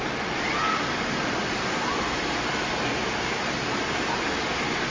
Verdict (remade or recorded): recorded